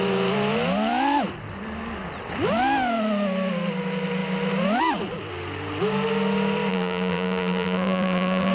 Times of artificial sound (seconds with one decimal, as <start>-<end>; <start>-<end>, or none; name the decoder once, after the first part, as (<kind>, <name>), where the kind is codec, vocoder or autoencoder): 6.7-8.5 (vocoder, BigVGAN v2)